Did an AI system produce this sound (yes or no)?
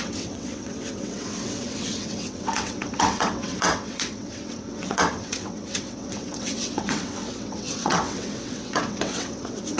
yes